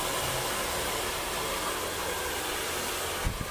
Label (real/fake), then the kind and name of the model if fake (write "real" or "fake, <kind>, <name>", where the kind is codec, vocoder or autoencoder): real